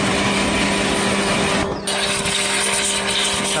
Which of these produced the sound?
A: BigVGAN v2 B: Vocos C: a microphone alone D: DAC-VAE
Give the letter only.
C